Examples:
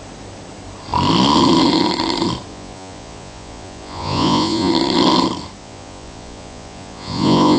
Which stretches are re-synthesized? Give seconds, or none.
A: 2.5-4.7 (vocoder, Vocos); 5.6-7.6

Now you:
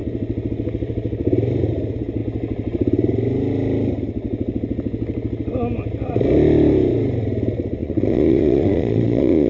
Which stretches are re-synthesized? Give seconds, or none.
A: 7.8-9.5 (vocoder, Vocos)

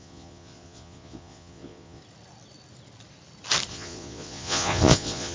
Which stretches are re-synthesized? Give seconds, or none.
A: 0.0-2.0 (vocoder, Vocos); 3.7-5.3

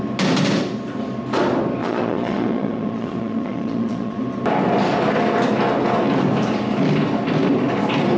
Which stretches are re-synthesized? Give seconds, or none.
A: 1.8-4.2 (vocoder, Vocos)